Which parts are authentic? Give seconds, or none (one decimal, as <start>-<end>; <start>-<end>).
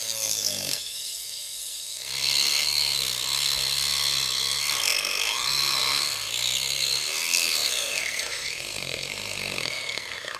none